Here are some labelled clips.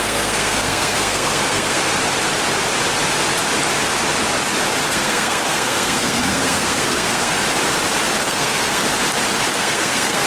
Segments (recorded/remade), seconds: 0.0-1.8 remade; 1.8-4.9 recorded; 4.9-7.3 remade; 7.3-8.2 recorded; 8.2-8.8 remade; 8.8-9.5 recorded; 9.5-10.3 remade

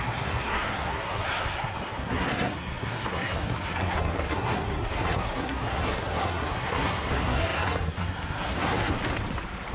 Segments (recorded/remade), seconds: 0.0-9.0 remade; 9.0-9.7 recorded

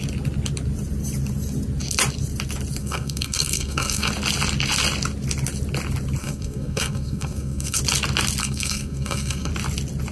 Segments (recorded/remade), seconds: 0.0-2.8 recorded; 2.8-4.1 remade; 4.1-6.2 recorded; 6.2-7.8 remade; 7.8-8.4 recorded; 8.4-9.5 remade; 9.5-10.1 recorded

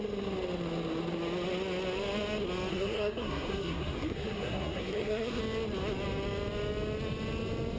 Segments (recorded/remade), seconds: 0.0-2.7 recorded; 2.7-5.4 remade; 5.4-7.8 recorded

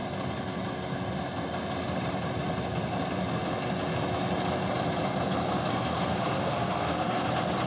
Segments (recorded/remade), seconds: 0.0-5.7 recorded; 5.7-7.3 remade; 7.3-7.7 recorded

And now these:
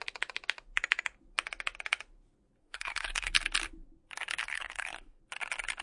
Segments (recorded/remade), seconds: 0.0-2.6 recorded; 2.6-3.3 remade; 3.3-4.4 recorded; 4.4-5.2 remade; 5.2-5.8 recorded